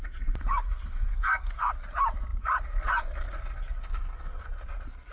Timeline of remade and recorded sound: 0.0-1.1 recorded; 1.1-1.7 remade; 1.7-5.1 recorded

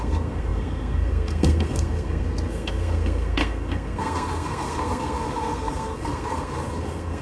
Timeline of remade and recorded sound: 0.0-7.2 remade

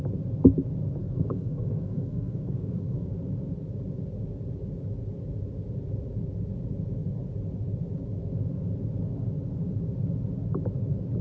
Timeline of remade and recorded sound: 0.0-1.0 recorded; 1.0-3.1 remade; 3.1-11.2 recorded

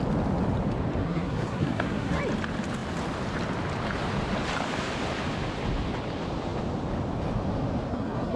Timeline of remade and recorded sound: 0.0-1.0 recorded; 1.0-2.2 remade; 2.2-7.9 recorded; 7.9-8.4 remade

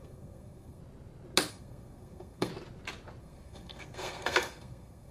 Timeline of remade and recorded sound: 0.0-0.8 remade; 0.8-1.5 recorded; 1.5-2.5 remade; 2.5-3.2 recorded; 3.2-5.1 remade

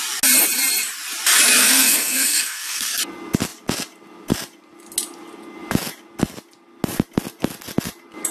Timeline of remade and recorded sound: 0.0-1.6 recorded; 1.6-3.0 remade; 3.0-8.3 recorded